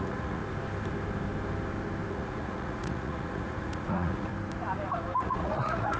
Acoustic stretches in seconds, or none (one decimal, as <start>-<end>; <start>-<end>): 0.4-2.1; 4.3-5.2